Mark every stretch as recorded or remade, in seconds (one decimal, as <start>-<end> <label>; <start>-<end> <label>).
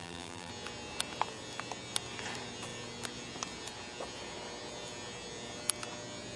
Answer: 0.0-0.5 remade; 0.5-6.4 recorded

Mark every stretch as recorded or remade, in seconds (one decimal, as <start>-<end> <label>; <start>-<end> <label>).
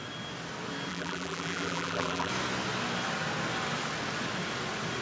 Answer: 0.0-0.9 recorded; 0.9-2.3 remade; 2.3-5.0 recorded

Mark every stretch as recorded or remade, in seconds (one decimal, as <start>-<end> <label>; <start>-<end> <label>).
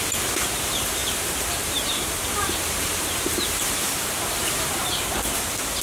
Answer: 0.0-5.8 remade